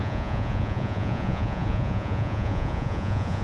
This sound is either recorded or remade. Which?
remade